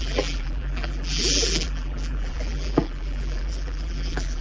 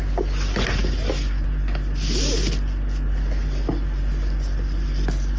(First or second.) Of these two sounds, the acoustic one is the second